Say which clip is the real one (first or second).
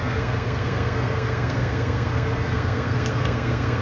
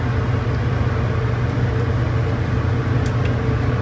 second